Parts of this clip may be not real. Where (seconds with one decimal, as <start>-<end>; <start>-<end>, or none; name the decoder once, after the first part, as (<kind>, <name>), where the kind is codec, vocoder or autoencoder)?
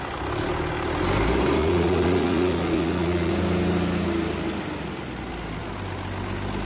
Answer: 1.6-3.3 (vocoder, Vocos)